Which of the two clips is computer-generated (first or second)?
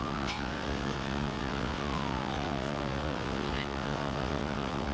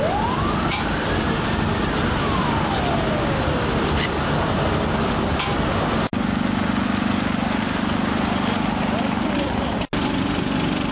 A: first